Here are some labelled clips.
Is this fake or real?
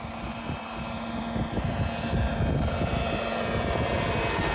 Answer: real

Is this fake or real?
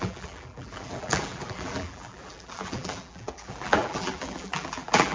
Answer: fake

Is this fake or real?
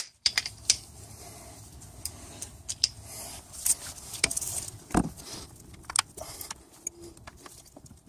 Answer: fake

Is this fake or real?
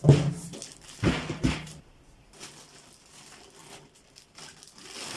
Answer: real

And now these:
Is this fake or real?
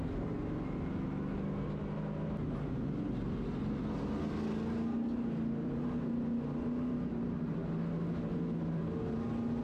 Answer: real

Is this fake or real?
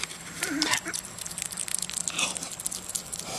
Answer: real